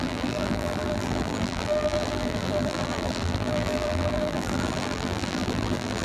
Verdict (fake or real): fake